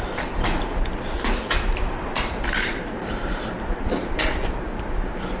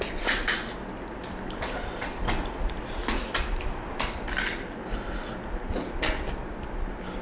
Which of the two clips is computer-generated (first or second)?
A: first